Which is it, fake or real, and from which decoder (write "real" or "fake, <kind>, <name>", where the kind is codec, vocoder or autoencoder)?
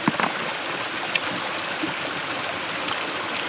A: real